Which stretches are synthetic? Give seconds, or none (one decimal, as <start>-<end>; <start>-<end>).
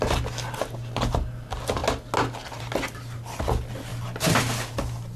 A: none